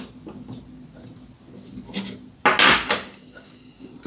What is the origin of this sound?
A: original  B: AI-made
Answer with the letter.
A